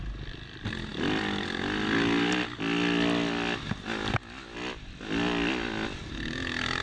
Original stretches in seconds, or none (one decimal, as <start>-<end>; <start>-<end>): 0.0-6.8